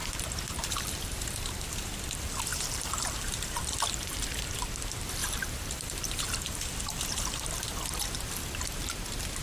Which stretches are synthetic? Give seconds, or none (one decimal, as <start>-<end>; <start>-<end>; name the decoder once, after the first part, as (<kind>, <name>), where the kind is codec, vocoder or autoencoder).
0.0-1.9 (vocoder, BigVGAN v2); 2.5-3.7; 5.2-6.2